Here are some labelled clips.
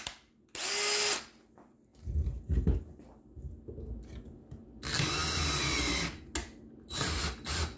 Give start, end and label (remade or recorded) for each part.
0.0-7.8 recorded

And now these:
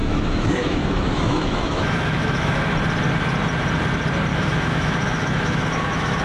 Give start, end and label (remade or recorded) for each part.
0.0-2.6 remade; 2.6-4.3 recorded; 4.3-6.2 remade

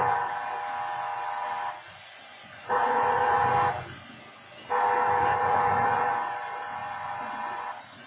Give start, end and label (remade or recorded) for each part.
0.0-0.6 remade; 0.6-1.9 recorded; 1.9-3.5 remade; 3.5-5.2 recorded; 5.2-8.1 remade

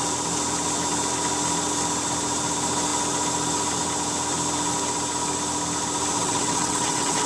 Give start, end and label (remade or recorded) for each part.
0.0-6.2 recorded; 6.2-7.3 remade

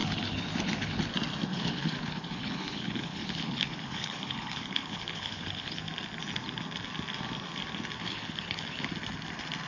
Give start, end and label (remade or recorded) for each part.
0.0-1.0 remade; 1.0-1.5 recorded; 1.5-5.8 remade; 5.8-8.0 recorded; 8.0-8.9 remade; 8.9-9.7 recorded

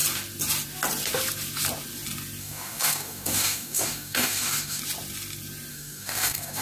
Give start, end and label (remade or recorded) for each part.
0.0-2.4 recorded; 2.4-4.8 remade; 4.8-5.7 recorded; 5.7-6.6 remade

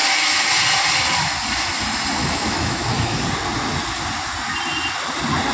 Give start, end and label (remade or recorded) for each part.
0.0-2.2 recorded; 2.2-3.2 remade; 3.2-5.5 recorded